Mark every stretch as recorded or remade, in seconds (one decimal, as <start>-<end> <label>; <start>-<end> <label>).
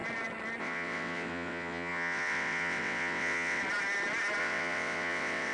0.0-0.6 recorded; 0.6-3.6 remade; 3.6-4.4 recorded; 4.4-5.5 remade